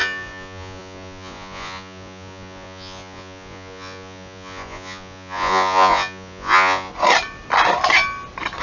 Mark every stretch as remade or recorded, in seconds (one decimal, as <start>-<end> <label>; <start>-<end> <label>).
0.0-6.9 remade; 6.9-8.6 recorded